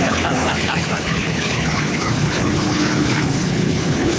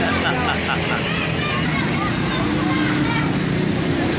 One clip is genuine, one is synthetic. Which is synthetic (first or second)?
first